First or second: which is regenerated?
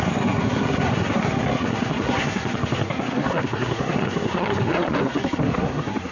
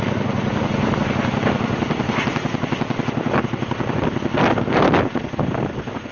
first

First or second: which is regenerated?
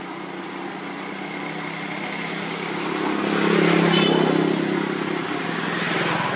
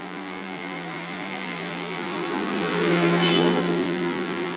second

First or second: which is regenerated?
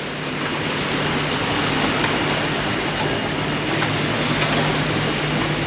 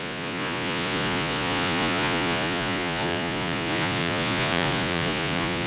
second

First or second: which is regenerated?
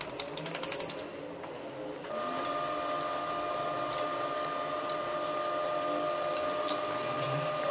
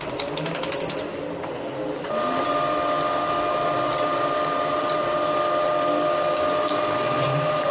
second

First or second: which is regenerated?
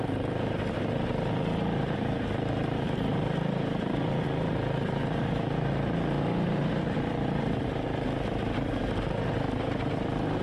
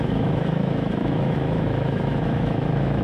second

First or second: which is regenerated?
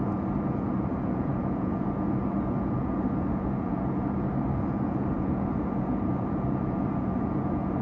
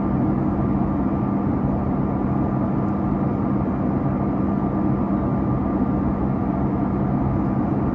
first